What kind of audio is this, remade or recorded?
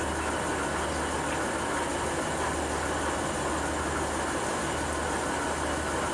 recorded